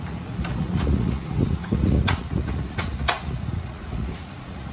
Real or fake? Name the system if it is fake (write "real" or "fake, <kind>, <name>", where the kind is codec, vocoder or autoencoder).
fake, vocoder, Vocos